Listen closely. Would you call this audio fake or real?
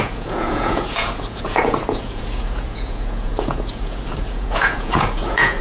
fake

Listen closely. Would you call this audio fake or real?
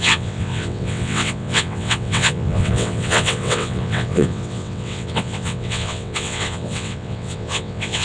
fake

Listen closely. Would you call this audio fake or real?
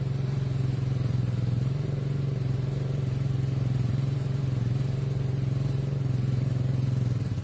fake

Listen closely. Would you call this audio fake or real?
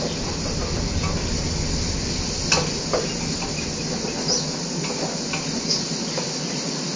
real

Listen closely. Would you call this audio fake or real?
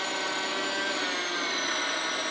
real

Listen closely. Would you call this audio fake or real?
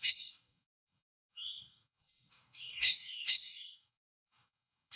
fake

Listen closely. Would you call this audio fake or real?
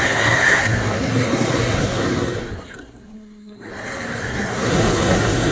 fake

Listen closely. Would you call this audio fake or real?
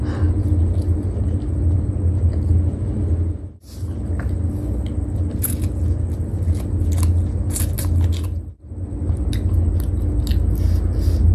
real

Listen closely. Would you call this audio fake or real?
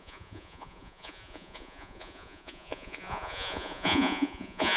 fake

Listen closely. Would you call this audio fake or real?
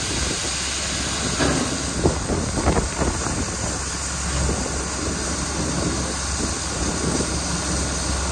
real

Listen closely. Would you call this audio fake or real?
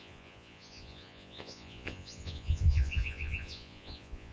fake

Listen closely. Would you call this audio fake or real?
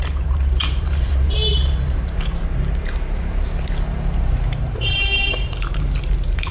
fake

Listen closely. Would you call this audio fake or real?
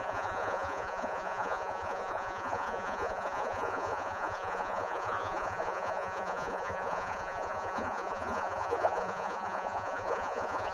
fake